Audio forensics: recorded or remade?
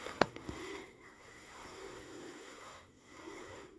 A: remade